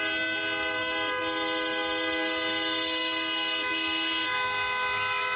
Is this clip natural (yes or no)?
yes